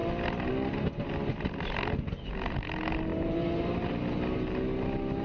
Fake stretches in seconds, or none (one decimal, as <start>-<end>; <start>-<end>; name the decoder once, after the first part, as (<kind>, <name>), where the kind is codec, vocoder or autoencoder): 3.1-3.9 (vocoder, BigVGAN v2)

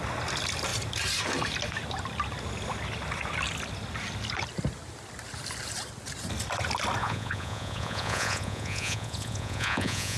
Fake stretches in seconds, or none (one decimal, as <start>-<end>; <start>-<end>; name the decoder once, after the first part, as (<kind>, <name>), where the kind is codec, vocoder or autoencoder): 7.0-10.2 (vocoder, Vocos)

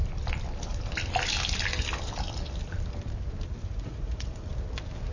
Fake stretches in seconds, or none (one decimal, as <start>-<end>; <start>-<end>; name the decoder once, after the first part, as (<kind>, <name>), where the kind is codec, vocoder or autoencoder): 3.7-4.5 (vocoder, Vocos)

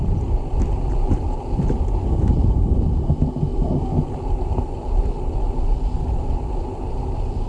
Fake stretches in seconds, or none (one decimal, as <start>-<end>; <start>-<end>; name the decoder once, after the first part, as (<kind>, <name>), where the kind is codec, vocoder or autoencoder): none

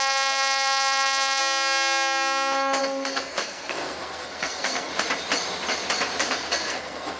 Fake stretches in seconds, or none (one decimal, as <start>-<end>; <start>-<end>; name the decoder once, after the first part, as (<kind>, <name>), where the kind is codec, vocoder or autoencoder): 0.0-1.4 (codec, SNAC); 2.8-4.9; 6.2-7.2